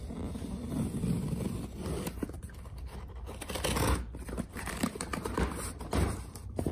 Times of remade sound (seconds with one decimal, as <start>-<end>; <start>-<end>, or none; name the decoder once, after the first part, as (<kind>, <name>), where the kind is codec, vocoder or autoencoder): 0.0-6.7 (vocoder, BigVGAN v2)